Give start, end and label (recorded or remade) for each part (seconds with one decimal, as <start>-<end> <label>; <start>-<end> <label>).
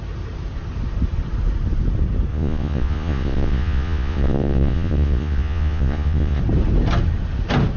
0.0-2.3 recorded; 2.3-6.4 remade; 6.4-7.8 recorded